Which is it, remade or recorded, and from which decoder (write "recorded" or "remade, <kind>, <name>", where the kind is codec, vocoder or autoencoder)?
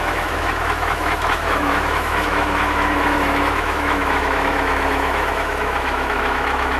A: remade, autoencoder, DAC-VAE